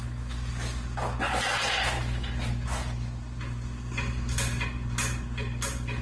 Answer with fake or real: real